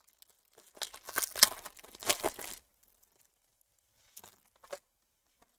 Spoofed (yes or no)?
no